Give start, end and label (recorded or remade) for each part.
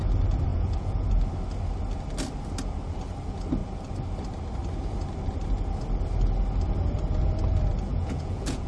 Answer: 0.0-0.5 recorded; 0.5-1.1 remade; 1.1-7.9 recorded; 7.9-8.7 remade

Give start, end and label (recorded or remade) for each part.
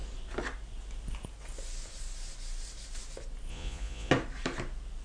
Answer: 0.0-3.5 recorded; 3.5-4.1 remade; 4.1-5.0 recorded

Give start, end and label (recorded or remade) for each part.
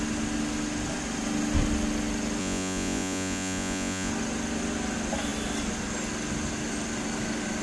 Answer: 0.0-2.4 recorded; 2.4-4.1 remade; 4.1-7.6 recorded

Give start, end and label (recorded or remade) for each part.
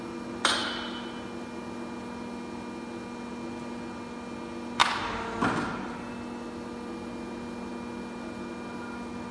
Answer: 0.0-9.3 recorded